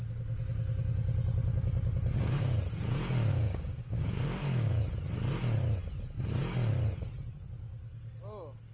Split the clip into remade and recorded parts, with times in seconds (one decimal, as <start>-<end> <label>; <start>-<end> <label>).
0.0-2.1 recorded; 2.1-2.6 remade; 2.6-3.3 recorded; 3.3-4.7 remade; 4.7-8.7 recorded